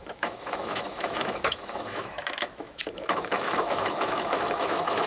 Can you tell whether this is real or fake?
fake